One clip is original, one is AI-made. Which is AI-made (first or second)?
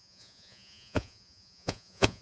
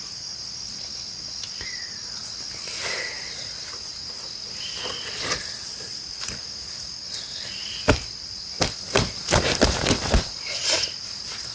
first